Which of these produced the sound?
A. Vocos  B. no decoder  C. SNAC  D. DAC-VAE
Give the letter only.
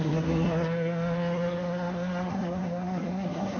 C